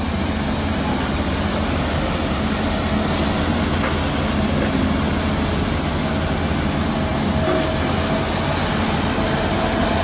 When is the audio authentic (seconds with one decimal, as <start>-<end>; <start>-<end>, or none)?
0.0-10.0